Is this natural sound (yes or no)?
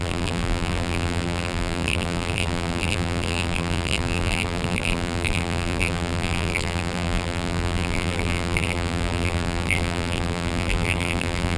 no